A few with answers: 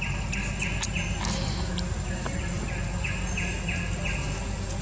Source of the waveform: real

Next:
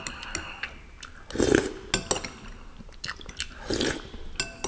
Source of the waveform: real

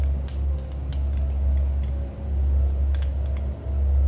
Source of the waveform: real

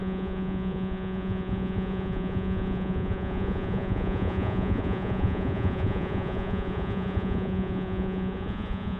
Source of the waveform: fake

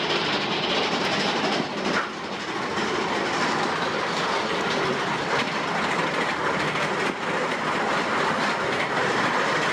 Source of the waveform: real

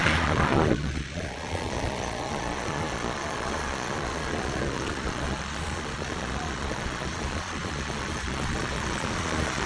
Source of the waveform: fake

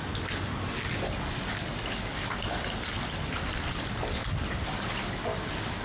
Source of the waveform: real